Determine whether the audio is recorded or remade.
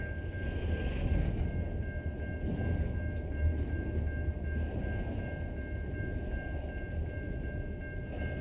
recorded